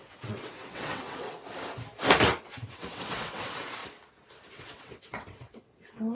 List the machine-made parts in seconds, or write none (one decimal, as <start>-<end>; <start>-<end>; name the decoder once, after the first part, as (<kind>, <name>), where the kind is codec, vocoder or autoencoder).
0.0-1.4 (vocoder, WaveNeXt); 2.4-3.8; 4.5-6.1